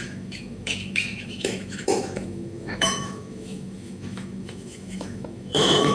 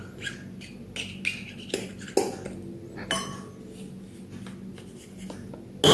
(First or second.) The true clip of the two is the second